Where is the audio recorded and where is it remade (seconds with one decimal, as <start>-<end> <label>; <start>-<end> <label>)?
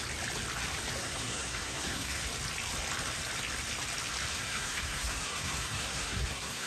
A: 0.0-1.0 recorded; 1.0-2.2 remade; 2.2-4.3 recorded; 4.3-6.7 remade